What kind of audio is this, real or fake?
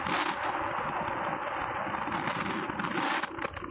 real